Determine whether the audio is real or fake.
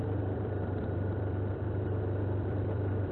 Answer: fake